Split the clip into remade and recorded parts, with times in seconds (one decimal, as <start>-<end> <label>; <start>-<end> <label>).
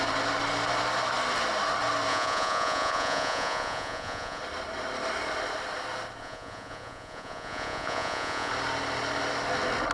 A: 0.0-2.1 recorded; 2.1-4.4 remade; 4.4-6.2 recorded; 6.2-8.5 remade; 8.5-9.9 recorded